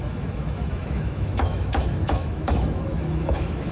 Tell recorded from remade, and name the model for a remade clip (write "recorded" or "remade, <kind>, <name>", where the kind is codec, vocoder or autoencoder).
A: remade, autoencoder, DAC-VAE